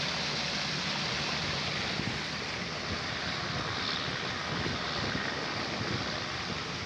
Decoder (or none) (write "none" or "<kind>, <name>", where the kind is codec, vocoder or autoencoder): none